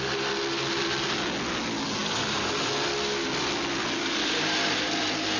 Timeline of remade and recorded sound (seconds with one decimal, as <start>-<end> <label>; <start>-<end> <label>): 0.0-5.4 recorded